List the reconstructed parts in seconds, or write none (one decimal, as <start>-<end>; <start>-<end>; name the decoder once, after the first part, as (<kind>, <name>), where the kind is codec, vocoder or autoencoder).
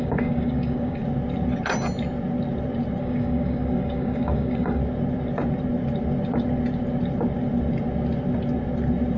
0.0-1.0 (codec, DAC); 3.0-4.8